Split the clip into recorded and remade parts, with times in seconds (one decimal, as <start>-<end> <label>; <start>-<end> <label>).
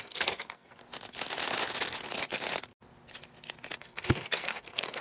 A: 0.0-0.8 remade; 0.8-3.8 recorded; 3.8-5.0 remade